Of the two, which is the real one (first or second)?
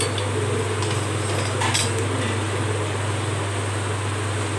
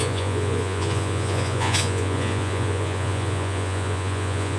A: first